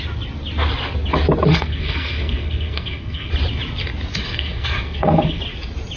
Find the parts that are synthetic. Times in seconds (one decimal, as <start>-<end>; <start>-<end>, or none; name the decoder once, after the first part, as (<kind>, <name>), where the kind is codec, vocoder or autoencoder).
1.5-3.3 (codec, SNAC); 4.1-5.4